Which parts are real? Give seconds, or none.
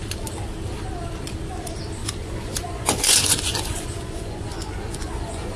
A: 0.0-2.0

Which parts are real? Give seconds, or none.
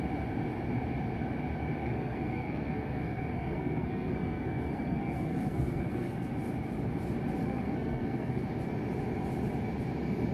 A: 0.0-1.8; 6.4-7.4; 8.4-10.3